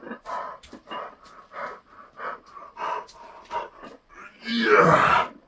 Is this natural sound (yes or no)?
yes